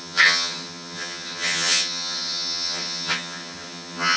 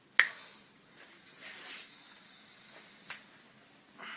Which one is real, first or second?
second